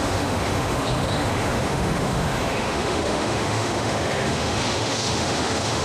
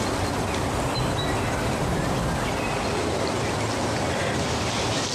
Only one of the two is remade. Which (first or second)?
first